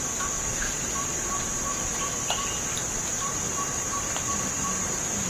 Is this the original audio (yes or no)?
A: yes